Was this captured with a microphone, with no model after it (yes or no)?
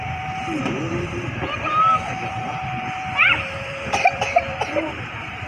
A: no